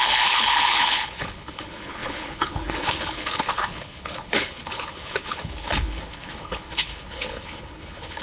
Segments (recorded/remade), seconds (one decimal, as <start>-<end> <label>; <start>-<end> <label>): 0.0-8.2 remade